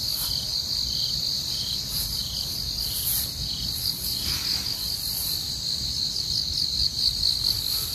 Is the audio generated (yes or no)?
no